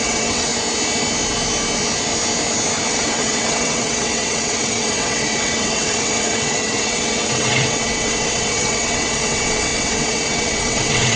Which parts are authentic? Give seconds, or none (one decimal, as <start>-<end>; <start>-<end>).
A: 0.5-2.9